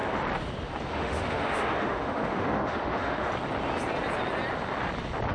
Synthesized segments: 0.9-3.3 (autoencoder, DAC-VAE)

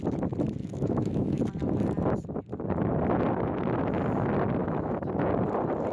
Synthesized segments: 0.6-1.4 (autoencoder, DAC-VAE); 4.6-5.3

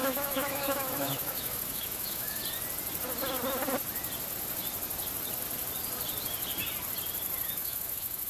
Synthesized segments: 0.0-2.4 (autoencoder, DAC-VAE); 7.4-8.3